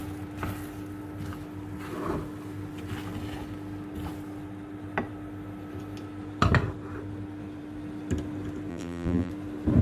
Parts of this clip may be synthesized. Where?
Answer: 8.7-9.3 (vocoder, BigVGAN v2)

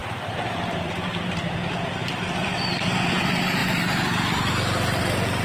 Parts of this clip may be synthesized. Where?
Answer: 0.0-1.6 (vocoder, BigVGAN v2); 2.0-2.8; 3.6-4.5

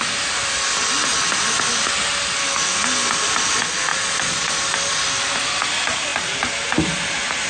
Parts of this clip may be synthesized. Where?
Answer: 3.9-4.5 (vocoder, Vocos)

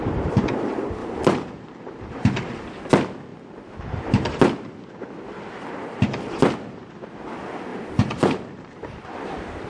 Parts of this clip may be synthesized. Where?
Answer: 1.0-2.8 (vocoder, BigVGAN v2); 7.7-8.9